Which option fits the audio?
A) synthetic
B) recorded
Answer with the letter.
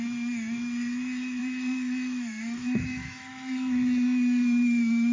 A